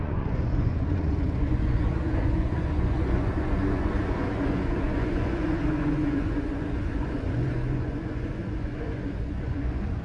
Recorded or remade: remade